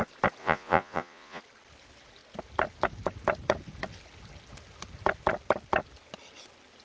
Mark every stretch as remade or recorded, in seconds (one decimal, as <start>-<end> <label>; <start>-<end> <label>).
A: 0.0-0.4 recorded; 0.4-1.4 remade; 1.4-6.8 recorded